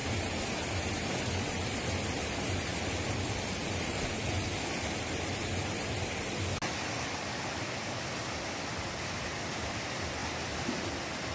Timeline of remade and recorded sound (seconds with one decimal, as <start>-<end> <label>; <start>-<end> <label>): 0.0-1.2 remade; 1.2-2.7 recorded; 2.7-4.2 remade; 4.2-8.2 recorded; 8.2-9.2 remade; 9.2-11.3 recorded